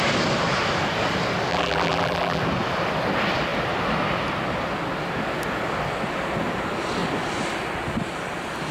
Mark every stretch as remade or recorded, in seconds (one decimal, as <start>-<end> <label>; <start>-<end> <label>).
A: 0.0-1.5 recorded; 1.5-2.4 remade; 2.4-8.7 recorded